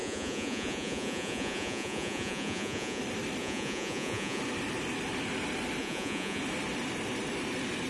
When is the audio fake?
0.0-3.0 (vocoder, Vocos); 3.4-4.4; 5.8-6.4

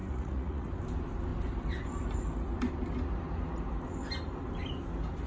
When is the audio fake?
0.0-0.7 (vocoder, Vocos)

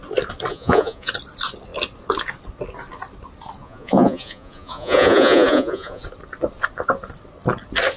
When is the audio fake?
0.5-1.1 (vocoder, Vocos); 3.6-6.0